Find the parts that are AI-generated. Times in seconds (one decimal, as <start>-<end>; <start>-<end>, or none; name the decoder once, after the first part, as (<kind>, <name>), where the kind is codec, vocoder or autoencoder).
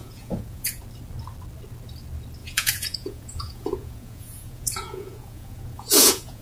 0.0-0.8 (vocoder, Vocos); 2.4-6.4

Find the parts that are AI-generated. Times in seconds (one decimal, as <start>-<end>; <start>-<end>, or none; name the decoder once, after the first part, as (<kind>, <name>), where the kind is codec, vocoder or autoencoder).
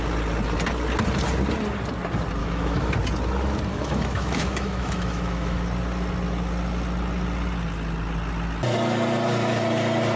2.4-2.9 (autoencoder, DAC-VAE); 3.7-5.6